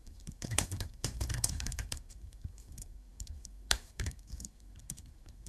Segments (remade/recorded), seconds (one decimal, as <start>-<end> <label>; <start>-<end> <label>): 0.0-5.5 remade